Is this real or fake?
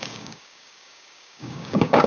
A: fake